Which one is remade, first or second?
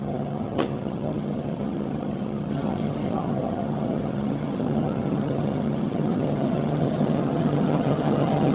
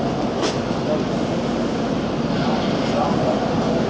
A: first